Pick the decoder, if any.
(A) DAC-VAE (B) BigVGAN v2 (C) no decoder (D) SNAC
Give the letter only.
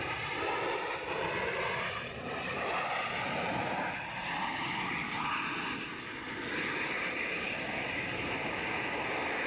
C